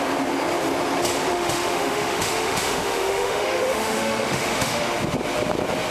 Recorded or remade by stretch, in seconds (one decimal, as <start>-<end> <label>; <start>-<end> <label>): 0.0-1.3 recorded; 1.3-4.8 remade; 4.8-5.9 recorded